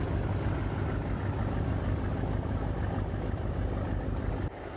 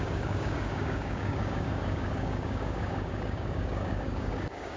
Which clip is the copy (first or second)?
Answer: second